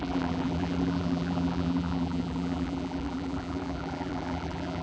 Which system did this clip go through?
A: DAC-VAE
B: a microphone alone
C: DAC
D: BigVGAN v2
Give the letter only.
D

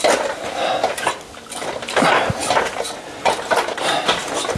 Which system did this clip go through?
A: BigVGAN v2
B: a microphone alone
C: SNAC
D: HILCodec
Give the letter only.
B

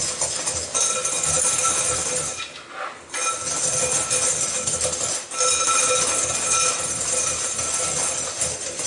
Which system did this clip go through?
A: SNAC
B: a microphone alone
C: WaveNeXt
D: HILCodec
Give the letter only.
B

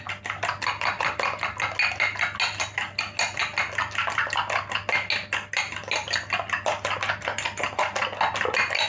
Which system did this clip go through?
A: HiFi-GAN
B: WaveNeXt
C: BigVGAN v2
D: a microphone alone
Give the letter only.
D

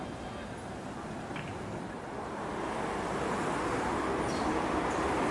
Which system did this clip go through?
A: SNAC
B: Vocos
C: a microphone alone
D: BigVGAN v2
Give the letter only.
C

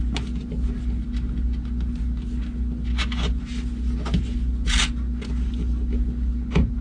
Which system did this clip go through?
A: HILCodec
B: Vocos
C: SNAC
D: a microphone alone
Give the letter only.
D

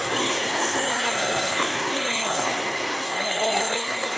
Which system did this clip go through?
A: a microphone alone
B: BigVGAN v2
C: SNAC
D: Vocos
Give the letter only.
C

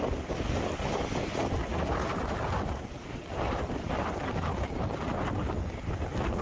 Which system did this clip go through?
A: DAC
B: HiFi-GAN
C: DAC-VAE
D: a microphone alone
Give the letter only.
D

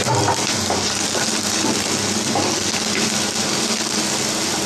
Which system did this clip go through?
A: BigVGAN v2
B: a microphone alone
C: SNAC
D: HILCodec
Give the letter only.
B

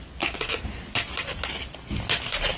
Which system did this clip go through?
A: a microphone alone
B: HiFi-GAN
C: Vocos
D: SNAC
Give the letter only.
A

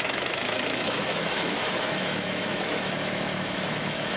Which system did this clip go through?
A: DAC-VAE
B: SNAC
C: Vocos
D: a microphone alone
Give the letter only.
A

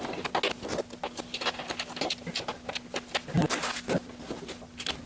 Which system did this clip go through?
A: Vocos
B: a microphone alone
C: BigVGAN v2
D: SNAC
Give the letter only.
B